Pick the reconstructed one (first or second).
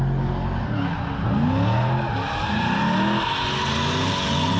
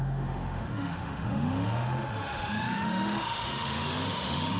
second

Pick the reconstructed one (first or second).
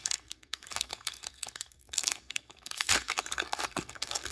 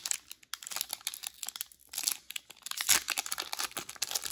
first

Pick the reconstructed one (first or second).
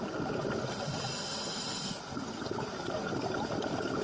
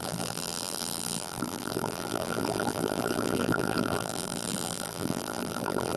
second